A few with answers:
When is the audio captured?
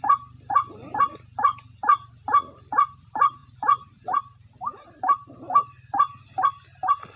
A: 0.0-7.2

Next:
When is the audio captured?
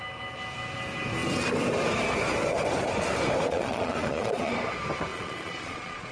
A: 0.0-3.5; 4.5-5.1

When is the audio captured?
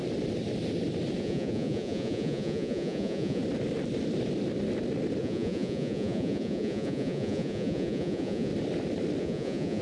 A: 0.0-1.2; 3.4-5.2; 8.5-9.2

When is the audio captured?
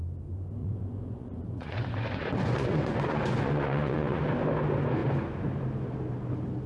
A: 0.0-0.6; 4.2-6.7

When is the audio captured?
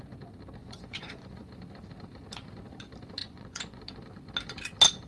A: 0.0-0.6; 1.5-3.2; 3.8-5.1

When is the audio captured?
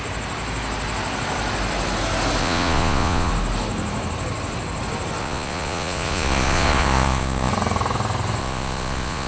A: 0.0-2.4; 3.3-5.2; 7.5-8.4